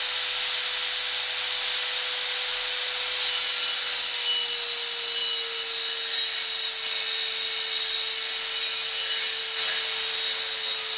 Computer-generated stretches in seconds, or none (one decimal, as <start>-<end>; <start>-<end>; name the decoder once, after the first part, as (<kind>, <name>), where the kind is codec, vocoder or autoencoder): none